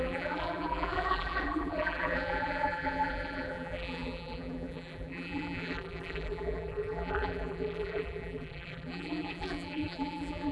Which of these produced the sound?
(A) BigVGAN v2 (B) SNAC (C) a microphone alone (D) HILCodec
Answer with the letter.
A